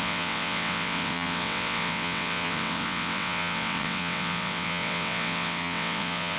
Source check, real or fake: fake